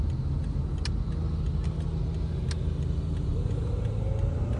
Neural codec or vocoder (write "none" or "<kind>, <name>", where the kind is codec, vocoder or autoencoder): none